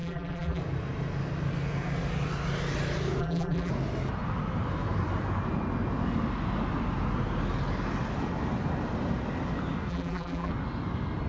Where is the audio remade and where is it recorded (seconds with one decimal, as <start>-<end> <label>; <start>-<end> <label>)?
0.0-0.6 remade; 0.6-3.2 recorded; 3.2-3.7 remade; 3.7-9.9 recorded; 9.9-10.5 remade; 10.5-11.3 recorded